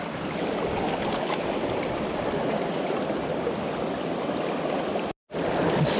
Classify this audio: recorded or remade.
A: recorded